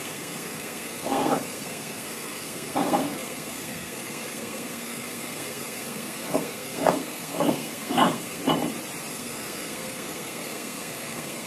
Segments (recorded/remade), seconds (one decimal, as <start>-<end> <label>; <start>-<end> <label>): 0.0-8.4 remade; 8.4-9.1 recorded; 9.1-11.5 remade